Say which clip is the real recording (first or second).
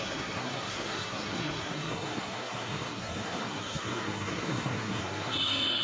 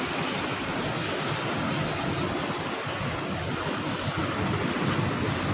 second